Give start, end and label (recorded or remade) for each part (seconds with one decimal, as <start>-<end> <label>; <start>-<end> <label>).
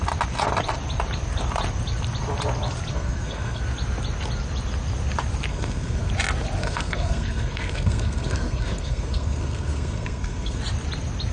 0.0-2.9 recorded; 2.9-3.6 remade; 3.6-5.5 recorded; 5.5-6.1 remade; 6.1-6.6 recorded; 6.6-10.6 remade; 10.6-11.3 recorded